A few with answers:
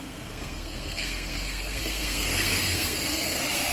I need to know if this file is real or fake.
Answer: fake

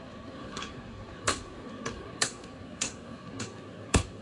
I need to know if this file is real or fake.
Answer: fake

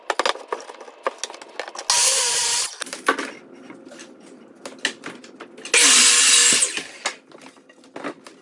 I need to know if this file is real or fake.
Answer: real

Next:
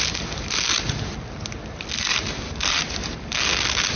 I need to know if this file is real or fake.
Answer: real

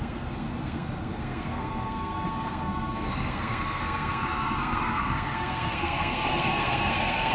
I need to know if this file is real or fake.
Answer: fake